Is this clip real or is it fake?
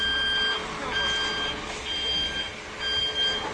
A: real